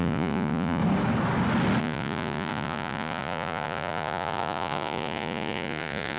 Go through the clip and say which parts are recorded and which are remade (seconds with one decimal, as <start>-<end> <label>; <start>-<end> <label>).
0.0-0.8 remade; 0.8-1.8 recorded; 1.8-6.2 remade